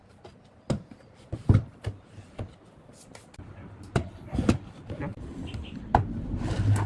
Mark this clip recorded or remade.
recorded